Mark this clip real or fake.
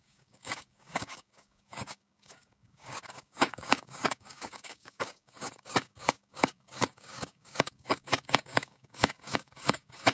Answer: fake